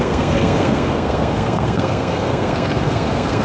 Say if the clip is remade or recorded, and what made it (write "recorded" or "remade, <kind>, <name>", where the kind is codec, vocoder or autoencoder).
remade, codec, SNAC